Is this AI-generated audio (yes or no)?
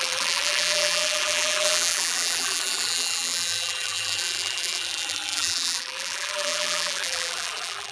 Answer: yes